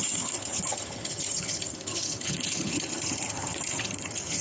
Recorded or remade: remade